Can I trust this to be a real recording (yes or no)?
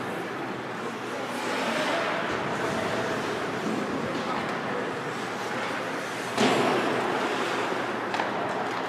yes